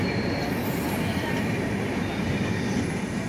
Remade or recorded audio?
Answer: recorded